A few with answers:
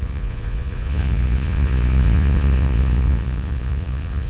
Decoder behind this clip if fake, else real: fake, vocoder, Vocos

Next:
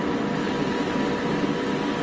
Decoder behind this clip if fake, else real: real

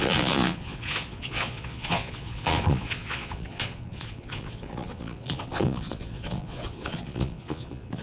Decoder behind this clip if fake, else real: fake, vocoder, Vocos